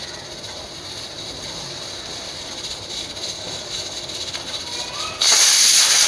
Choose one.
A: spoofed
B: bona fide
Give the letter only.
B